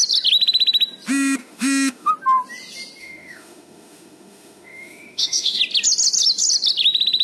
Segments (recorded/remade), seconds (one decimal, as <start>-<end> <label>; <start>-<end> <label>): 0.0-1.4 recorded; 1.4-2.1 remade; 2.1-3.0 recorded; 3.0-5.6 remade; 5.6-7.2 recorded